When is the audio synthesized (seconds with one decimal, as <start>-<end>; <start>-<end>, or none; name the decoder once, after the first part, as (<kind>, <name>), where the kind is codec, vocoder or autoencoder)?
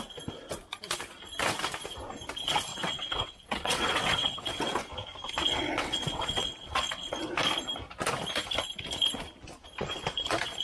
2.7-4.8 (vocoder, WaveNeXt); 5.4-7.2